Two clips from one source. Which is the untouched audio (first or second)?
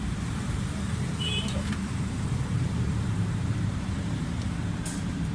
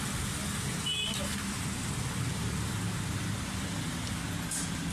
second